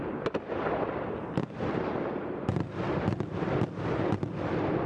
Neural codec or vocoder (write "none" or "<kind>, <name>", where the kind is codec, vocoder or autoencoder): none